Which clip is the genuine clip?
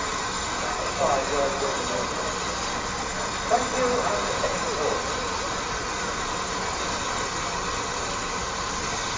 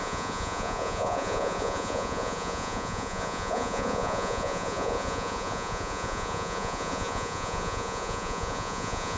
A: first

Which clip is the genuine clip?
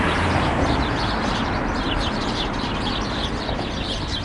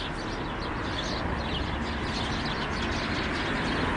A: second